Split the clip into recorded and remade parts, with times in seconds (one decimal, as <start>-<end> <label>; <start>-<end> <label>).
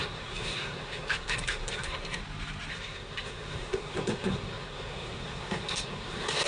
0.0-2.2 remade; 2.2-2.7 recorded; 2.7-6.5 remade